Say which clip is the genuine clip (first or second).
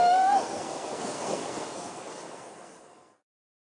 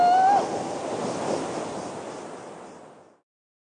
second